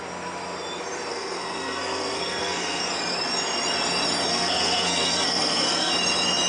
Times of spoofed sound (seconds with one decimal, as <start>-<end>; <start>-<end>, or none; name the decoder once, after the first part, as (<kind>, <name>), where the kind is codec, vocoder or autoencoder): 1.1-2.8 (codec, SNAC); 4.3-5.9